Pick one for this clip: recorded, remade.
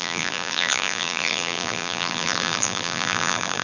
remade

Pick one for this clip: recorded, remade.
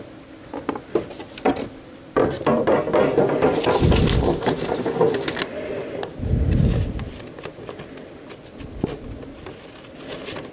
recorded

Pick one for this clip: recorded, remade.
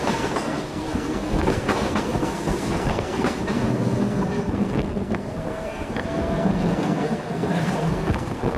remade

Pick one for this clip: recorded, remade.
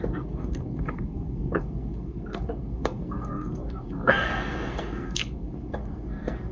remade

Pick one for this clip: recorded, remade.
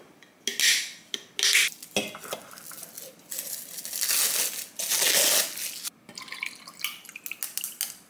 recorded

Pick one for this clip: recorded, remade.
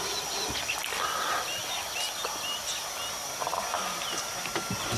recorded